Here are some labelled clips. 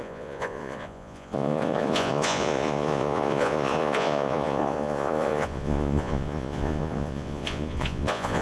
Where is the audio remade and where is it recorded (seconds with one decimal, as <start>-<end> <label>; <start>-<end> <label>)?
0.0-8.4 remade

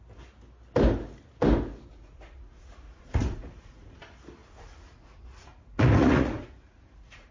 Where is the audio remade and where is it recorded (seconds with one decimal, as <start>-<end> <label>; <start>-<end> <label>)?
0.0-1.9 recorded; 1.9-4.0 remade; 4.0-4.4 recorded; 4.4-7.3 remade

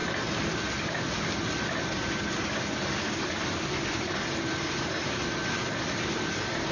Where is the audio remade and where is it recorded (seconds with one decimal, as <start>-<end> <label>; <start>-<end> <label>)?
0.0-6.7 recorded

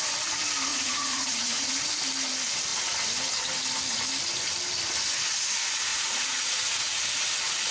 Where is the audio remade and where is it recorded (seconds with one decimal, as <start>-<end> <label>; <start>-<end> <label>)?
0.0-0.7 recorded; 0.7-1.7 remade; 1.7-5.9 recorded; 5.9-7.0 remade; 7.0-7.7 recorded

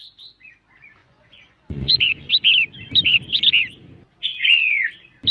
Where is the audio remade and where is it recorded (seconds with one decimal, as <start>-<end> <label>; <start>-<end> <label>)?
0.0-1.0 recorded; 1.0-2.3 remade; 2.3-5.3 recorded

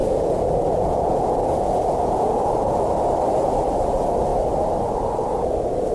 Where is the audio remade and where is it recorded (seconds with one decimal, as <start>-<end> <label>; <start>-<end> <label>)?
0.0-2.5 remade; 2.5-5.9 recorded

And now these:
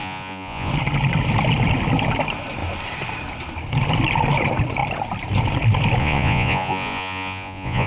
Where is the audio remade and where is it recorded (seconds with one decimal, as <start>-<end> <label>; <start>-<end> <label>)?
0.0-0.7 remade; 0.7-6.0 recorded; 6.0-7.9 remade